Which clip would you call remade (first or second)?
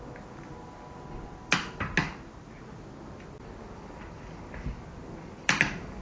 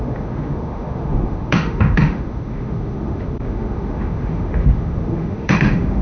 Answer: second